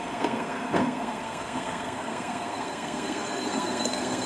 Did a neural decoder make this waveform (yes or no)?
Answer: yes